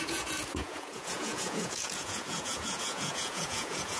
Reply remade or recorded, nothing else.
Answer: remade